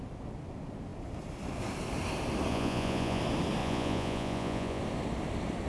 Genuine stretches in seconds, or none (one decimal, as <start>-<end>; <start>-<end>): 0.0-2.5; 3.2-3.6; 4.8-5.7